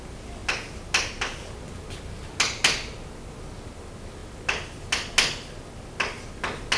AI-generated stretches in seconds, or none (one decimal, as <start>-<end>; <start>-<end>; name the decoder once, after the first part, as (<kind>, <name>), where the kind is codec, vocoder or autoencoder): none